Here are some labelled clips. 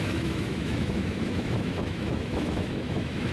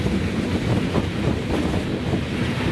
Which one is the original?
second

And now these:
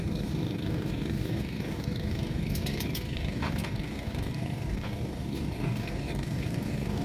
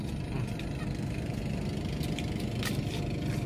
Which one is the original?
second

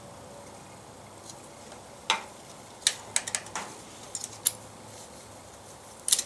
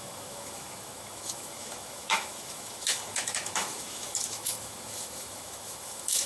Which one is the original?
first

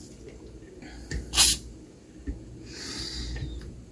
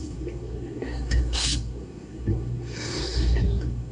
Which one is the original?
first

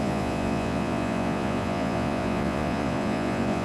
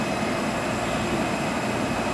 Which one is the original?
second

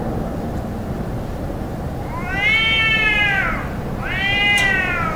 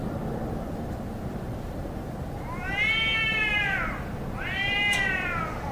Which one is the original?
first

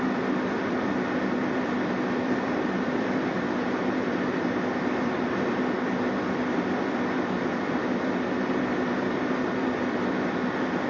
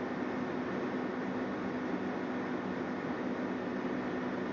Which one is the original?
second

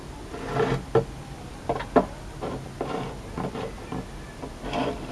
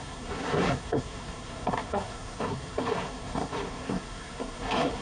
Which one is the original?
first